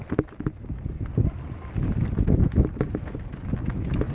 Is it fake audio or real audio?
real